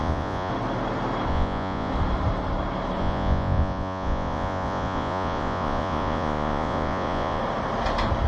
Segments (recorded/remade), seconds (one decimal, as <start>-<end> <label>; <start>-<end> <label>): 0.0-0.5 remade; 0.5-1.3 recorded; 1.3-1.9 remade; 1.9-3.0 recorded; 3.0-7.4 remade; 7.4-8.3 recorded